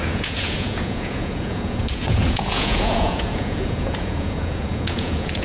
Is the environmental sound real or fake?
fake